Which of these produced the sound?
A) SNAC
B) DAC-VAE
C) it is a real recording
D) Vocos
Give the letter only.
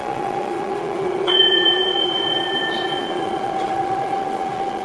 D